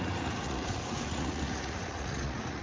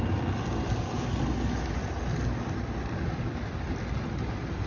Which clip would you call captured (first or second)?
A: second